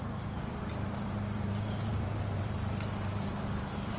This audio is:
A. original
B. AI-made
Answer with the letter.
B